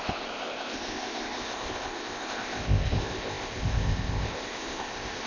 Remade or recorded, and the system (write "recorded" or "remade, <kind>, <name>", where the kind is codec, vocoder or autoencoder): remade, codec, ZipCodec